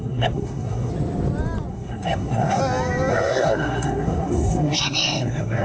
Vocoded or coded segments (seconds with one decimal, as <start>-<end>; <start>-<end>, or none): 0.0-0.9; 1.7-2.6; 3.1-5.6